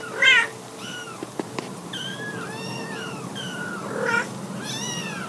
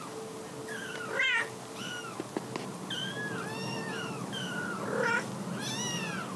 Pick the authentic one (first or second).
second